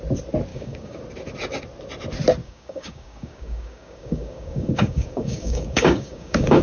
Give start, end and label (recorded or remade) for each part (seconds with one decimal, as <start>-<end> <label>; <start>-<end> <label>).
0.0-0.5 recorded; 0.5-1.0 remade; 1.0-2.4 recorded; 2.4-6.6 remade